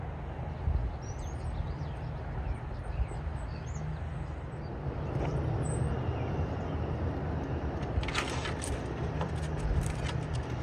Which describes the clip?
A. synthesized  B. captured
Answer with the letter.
B